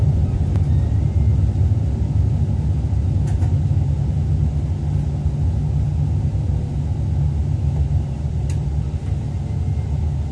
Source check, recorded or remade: recorded